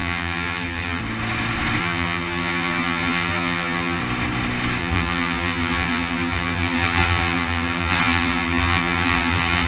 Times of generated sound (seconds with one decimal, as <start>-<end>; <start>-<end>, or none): 0.0-1.0; 1.8-4.0; 4.8-9.7